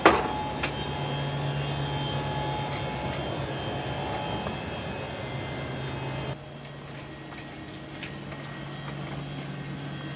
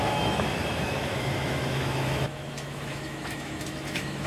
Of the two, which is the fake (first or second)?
second